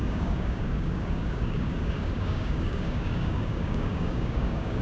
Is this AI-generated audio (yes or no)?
yes